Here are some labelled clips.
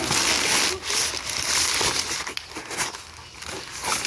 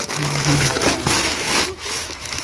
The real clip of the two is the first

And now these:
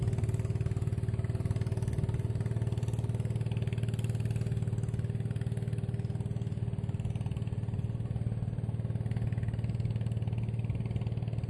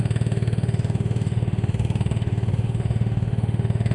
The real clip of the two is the first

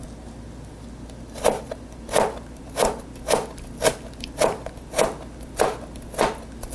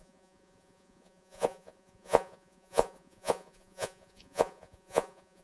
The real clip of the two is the first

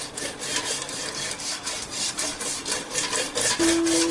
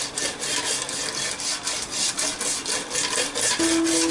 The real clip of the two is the second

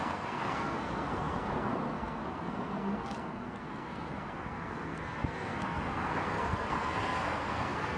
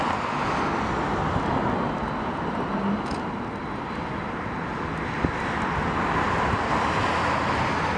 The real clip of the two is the second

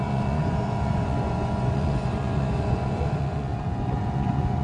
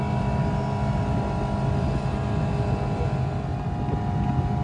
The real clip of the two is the second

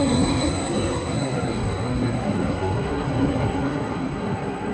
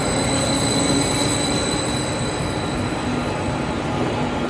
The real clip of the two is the second